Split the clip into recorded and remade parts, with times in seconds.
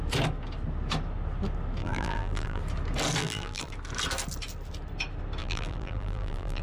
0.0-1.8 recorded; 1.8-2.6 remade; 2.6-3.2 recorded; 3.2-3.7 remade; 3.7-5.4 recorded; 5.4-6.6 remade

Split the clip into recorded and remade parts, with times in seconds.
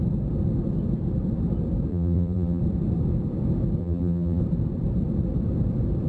0.0-1.9 recorded; 1.9-2.6 remade; 2.6-3.8 recorded; 3.8-4.4 remade; 4.4-6.1 recorded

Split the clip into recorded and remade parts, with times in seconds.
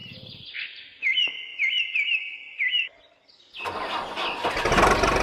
0.0-0.6 remade; 0.6-5.2 recorded